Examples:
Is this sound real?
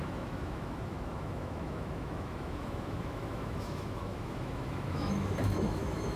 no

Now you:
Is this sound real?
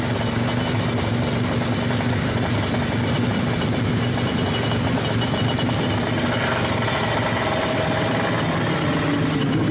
yes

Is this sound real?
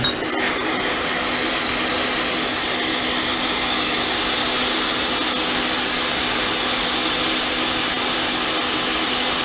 yes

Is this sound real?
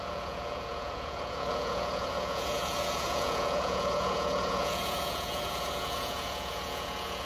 no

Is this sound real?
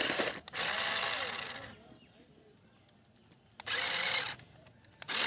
yes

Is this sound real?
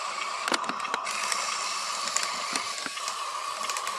yes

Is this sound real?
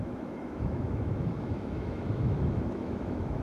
no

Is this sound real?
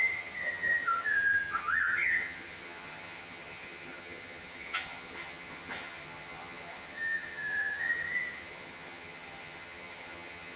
no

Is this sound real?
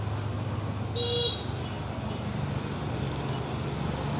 yes